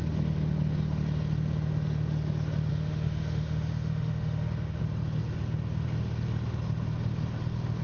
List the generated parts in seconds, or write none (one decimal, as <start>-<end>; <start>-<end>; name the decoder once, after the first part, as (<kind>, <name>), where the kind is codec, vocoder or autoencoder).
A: 2.7-4.8 (autoencoder, DAC-VAE)